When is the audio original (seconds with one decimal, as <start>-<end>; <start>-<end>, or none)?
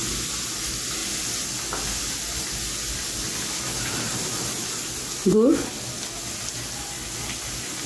0.0-7.9